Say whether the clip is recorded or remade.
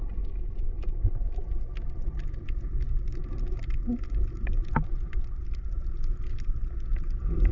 recorded